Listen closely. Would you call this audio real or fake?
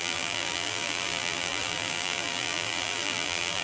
fake